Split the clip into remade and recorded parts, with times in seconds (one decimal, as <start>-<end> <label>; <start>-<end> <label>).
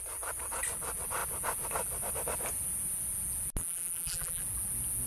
0.0-3.6 recorded; 3.6-4.4 remade; 4.4-5.1 recorded